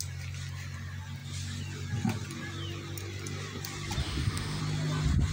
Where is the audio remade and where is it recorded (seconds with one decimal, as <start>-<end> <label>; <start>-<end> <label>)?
0.0-4.0 recorded; 4.0-4.6 remade; 4.6-5.3 recorded